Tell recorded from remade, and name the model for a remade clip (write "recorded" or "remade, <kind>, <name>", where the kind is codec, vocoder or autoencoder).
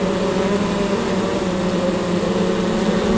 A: recorded